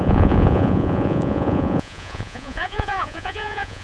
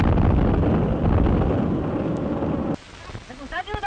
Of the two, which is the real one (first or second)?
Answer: second